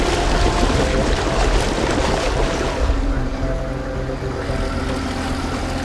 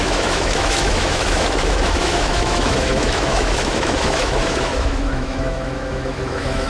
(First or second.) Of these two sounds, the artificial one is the second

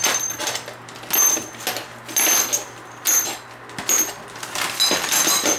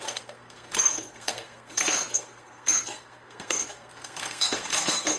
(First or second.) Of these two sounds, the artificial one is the second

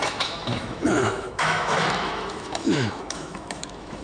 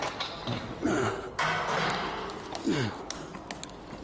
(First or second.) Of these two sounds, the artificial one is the first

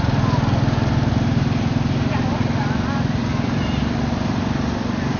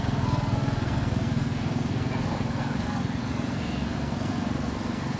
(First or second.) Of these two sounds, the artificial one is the second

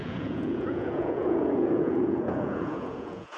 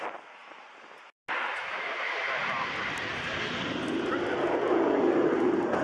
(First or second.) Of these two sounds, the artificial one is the first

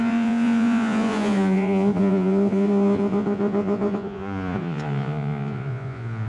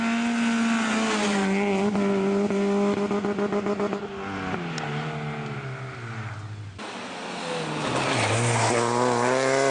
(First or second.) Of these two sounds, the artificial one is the first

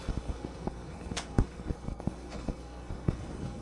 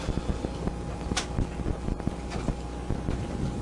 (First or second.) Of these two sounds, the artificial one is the first